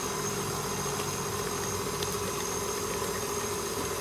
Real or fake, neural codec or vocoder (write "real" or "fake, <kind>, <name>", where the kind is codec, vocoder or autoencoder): real